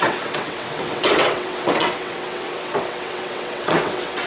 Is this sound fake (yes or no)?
yes